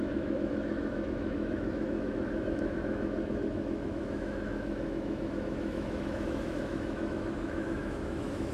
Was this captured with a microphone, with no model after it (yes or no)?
no